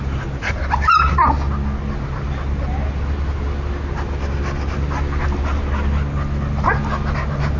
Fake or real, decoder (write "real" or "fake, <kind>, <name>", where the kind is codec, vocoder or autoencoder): real